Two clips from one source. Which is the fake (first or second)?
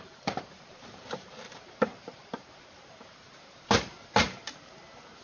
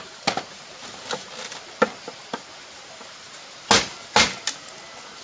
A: first